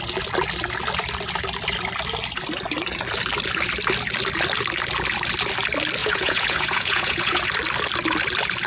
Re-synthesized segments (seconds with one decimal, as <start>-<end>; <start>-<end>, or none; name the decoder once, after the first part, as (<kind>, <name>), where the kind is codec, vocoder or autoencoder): 6.0-7.4 (vocoder, Vocos)